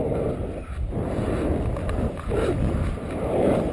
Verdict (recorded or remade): recorded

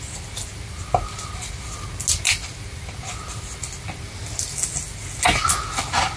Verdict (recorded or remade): recorded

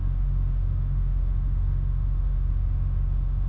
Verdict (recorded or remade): remade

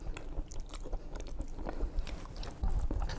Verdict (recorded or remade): recorded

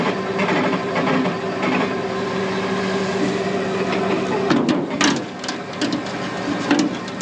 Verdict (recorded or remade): recorded